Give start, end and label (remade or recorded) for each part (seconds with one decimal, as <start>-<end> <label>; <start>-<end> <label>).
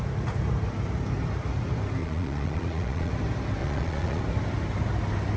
0.0-2.0 recorded; 2.0-3.1 remade; 3.1-3.6 recorded; 3.6-4.2 remade; 4.2-5.4 recorded